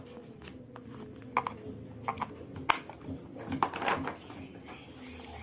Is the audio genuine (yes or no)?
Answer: yes